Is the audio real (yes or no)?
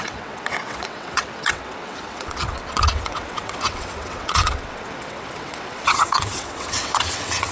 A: no